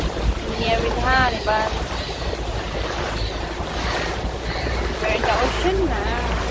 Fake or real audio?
fake